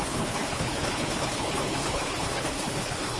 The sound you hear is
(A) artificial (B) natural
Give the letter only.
A